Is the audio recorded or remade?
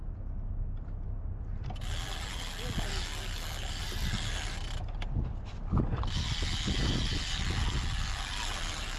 recorded